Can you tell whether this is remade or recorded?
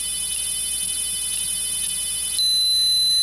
recorded